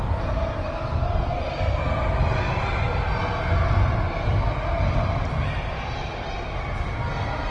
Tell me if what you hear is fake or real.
real